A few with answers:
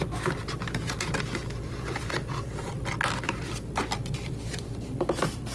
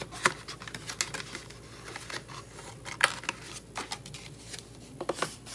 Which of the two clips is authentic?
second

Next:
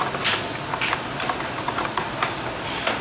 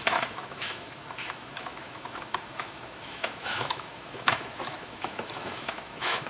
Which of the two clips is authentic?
first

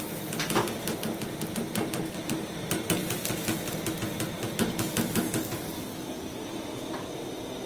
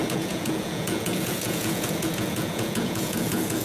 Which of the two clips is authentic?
first